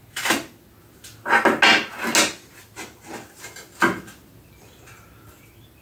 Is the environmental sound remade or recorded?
recorded